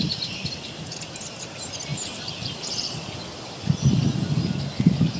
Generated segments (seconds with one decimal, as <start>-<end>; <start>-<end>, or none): none